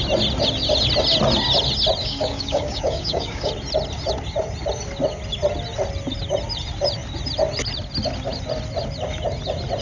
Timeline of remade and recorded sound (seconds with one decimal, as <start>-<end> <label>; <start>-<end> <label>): 0.0-2.0 recorded; 2.0-3.5 remade; 3.5-9.8 recorded